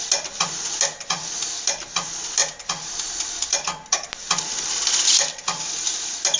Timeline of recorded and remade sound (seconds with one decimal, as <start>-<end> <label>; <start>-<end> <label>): 0.0-6.4 recorded